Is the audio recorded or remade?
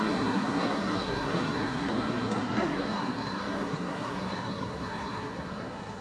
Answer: remade